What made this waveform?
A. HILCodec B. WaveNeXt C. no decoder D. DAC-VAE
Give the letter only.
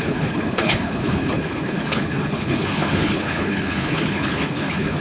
A